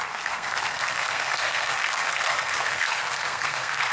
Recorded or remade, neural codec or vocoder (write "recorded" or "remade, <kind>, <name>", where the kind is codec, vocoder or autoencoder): remade, codec, SNAC